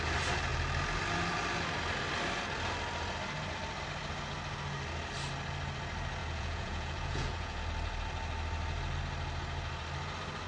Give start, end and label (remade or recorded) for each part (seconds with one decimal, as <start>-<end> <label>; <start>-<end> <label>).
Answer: 0.0-6.2 recorded; 6.2-7.6 remade; 7.6-10.5 recorded